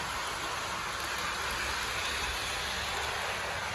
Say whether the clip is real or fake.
real